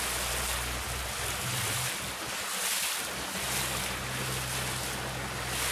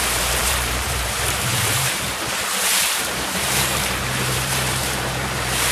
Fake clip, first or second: second